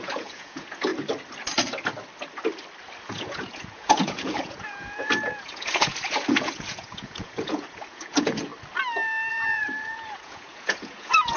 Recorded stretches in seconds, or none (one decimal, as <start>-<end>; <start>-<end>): 0.9-3.0; 8.5-9.3